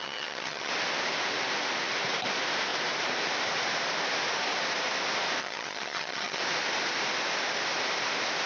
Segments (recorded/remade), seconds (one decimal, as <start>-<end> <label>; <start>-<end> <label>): 0.0-0.7 remade; 0.7-5.4 recorded; 5.4-6.4 remade; 6.4-8.5 recorded

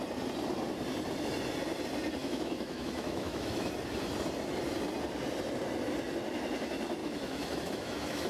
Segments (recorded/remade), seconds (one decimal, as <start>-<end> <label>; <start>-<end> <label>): 0.0-2.2 recorded; 2.2-3.7 remade; 3.7-7.0 recorded; 7.0-8.3 remade

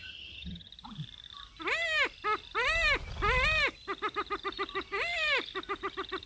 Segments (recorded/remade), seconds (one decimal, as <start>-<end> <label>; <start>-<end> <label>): 0.0-0.7 remade; 0.7-6.3 recorded

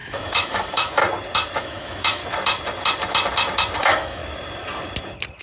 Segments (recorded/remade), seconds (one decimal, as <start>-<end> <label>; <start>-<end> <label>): 0.0-1.0 remade; 1.0-1.6 recorded; 1.6-2.2 remade; 2.2-3.8 recorded; 3.8-4.2 remade; 4.2-5.4 recorded

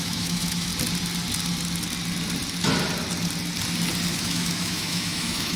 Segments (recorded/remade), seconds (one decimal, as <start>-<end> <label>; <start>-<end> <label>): 0.0-0.7 remade; 0.7-4.1 recorded; 4.1-5.6 remade

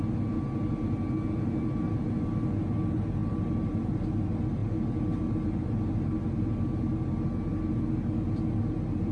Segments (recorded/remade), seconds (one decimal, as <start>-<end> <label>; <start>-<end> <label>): 0.0-9.1 recorded